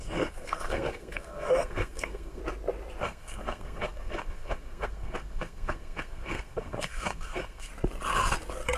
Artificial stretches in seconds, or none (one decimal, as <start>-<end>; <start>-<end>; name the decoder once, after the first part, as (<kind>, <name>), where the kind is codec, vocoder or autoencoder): 0.0-2.4 (codec, SNAC); 3.0-7.7